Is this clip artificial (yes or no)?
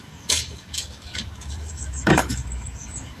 yes